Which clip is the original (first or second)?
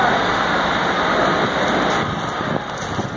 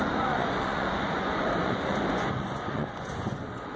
first